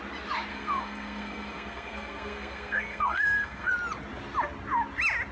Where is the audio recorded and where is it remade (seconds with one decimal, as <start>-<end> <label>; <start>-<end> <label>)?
0.0-0.5 recorded; 0.5-3.7 remade; 3.7-5.3 recorded